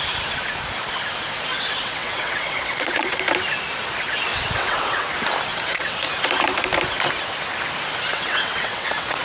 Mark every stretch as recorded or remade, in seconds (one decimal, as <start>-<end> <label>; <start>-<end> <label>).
0.0-1.5 recorded; 1.5-3.2 remade; 3.2-4.3 recorded; 4.3-5.1 remade; 5.1-5.5 recorded; 5.5-6.0 remade; 6.0-8.1 recorded; 8.1-9.2 remade